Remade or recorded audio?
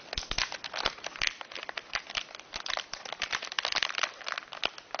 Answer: recorded